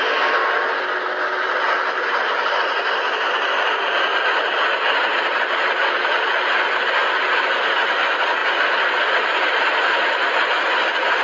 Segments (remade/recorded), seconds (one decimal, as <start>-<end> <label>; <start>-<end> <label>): 0.0-11.2 recorded